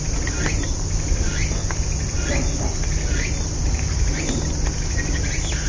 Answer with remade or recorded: recorded